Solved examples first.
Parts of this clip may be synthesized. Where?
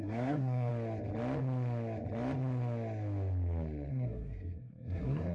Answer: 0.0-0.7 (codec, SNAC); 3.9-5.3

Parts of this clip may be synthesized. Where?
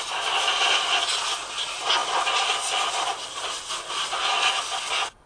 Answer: none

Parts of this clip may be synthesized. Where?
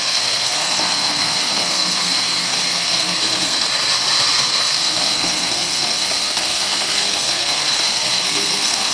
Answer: 0.0-3.7 (codec, SNAC); 4.5-8.9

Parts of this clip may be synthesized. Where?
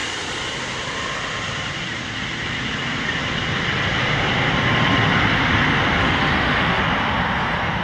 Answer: 6.0-6.8 (autoencoder, DAC-VAE)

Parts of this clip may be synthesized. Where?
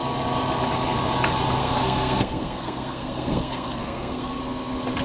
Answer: 1.6-4.4 (codec, SNAC)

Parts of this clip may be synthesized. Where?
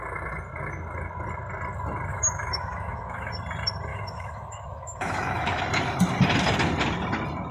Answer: 2.1-3.3 (autoencoder, DAC-VAE); 3.9-5.6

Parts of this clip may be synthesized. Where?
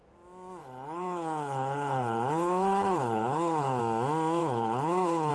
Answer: 0.6-3.8 (codec, HILCodec); 4.4-5.3